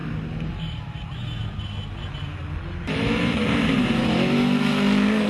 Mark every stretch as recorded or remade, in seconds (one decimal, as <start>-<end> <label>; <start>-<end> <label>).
0.0-5.3 recorded